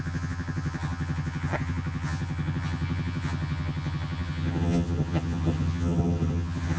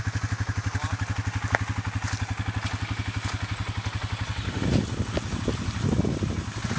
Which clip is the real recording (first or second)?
second